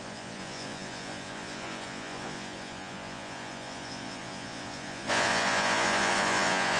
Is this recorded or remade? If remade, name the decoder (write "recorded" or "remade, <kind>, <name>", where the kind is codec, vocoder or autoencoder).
remade, vocoder, Vocos